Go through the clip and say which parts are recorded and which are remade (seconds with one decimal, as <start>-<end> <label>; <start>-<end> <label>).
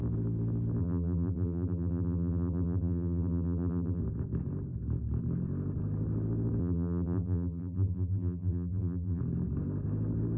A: 0.0-0.8 recorded; 0.8-4.0 remade; 4.0-6.6 recorded; 6.6-9.2 remade; 9.2-10.4 recorded